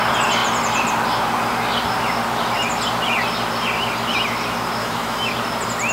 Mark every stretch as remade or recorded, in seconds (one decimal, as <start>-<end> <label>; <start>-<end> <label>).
0.0-4.8 recorded; 4.8-5.3 remade; 5.3-5.9 recorded